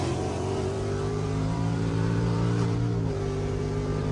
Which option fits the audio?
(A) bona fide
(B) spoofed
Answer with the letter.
B